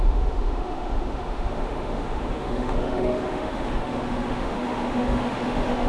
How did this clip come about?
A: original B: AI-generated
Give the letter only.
B